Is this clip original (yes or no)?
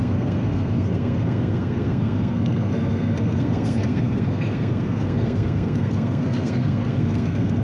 no